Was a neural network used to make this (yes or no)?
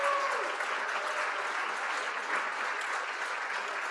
yes